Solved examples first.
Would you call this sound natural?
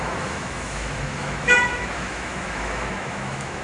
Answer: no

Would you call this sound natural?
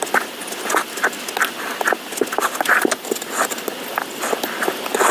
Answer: yes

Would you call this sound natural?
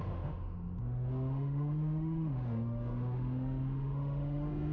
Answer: no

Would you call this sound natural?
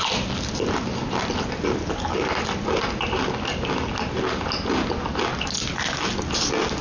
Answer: yes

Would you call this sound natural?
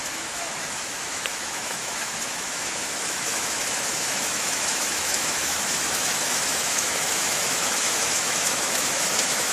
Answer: no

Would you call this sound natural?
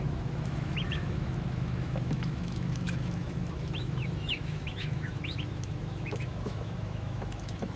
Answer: no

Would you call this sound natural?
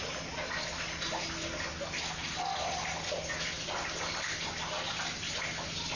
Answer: yes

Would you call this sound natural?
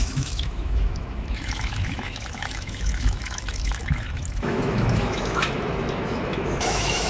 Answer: no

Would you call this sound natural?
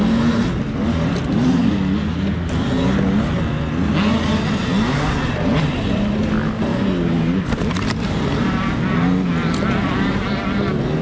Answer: yes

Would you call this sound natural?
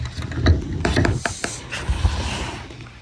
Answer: yes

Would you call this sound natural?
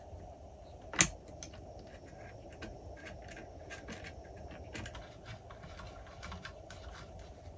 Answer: yes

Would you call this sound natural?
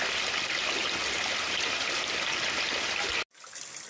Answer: yes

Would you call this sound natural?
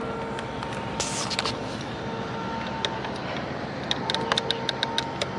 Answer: yes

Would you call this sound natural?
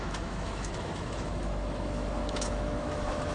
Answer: no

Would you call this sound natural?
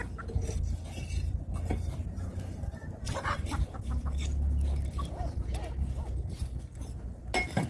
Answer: yes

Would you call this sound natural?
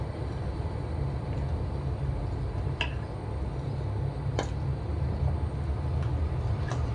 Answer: yes